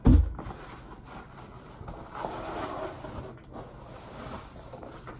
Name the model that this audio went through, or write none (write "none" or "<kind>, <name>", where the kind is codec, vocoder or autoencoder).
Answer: none